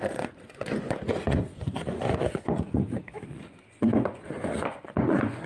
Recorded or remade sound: remade